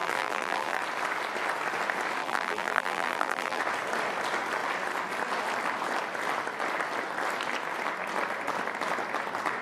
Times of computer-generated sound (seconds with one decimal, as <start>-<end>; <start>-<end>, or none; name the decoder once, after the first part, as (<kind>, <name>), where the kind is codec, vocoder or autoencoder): 0.0-0.8 (vocoder, BigVGAN v2); 2.2-3.6